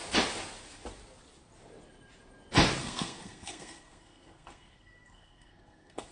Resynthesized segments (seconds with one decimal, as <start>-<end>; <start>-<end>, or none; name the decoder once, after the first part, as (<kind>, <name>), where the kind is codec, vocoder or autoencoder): 2.8-6.1 (codec, SNAC)